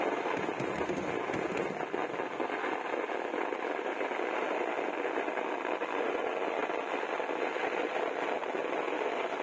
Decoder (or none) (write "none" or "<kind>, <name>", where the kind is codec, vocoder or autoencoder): none